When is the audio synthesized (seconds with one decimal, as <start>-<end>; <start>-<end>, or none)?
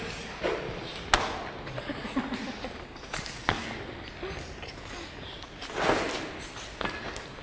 none